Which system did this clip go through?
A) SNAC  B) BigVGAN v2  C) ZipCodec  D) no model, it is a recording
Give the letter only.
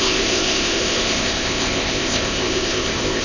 C